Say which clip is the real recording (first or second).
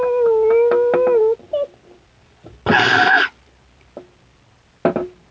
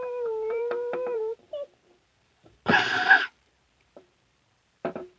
first